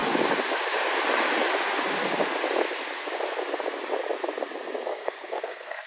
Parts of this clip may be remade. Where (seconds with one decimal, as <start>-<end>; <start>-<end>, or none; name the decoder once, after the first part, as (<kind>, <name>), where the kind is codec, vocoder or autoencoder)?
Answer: 4.9-5.9 (codec, SNAC)